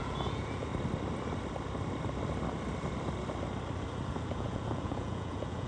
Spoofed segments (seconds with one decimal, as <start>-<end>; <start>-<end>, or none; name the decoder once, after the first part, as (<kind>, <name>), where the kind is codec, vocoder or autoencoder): 0.0-0.7 (vocoder, Vocos); 4.1-5.7